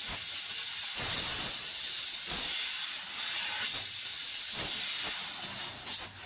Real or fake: real